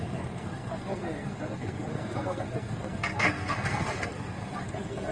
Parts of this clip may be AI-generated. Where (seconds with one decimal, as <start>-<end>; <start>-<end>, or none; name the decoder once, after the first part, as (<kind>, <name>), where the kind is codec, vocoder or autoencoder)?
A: 0.0-5.1 (codec, SNAC)